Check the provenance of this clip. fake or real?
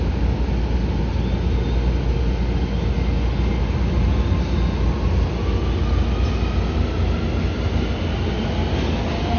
real